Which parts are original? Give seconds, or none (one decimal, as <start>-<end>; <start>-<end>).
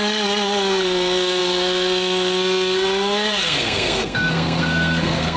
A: none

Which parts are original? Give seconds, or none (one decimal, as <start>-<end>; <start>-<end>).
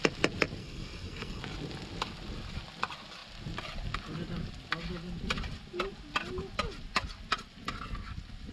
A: 0.0-0.6; 1.4-8.5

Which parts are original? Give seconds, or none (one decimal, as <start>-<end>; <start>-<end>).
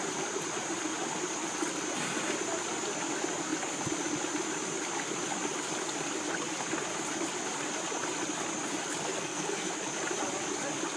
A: 0.0-9.0; 9.7-11.0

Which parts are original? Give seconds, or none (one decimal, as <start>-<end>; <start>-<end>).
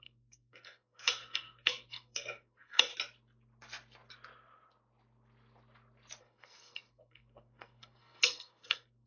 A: 2.9-6.2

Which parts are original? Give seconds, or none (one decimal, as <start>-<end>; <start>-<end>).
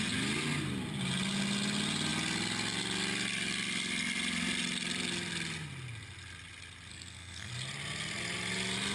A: 0.0-6.9; 7.5-8.9